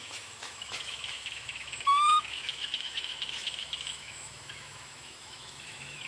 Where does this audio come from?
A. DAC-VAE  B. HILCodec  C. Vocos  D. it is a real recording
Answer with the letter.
A